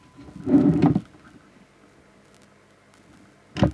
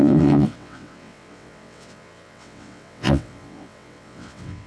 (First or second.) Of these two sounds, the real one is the first